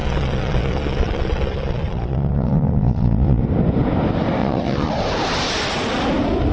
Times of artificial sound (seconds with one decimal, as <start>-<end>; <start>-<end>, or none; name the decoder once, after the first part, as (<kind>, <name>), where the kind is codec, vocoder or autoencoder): 0.0-3.4 (vocoder, Vocos); 4.4-4.9